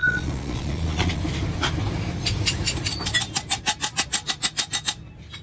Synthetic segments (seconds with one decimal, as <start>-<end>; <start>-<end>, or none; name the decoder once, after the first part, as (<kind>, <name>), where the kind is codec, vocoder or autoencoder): 0.0-1.2 (vocoder, Vocos)